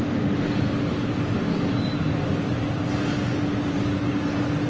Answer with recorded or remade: recorded